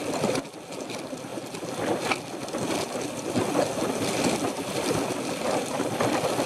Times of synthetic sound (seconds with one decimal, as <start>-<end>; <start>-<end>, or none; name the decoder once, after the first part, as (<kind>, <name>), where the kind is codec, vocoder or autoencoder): none